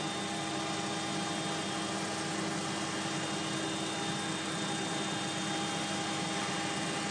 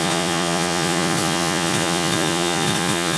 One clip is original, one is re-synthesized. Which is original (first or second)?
first